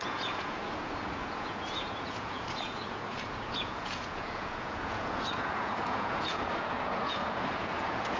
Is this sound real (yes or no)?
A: no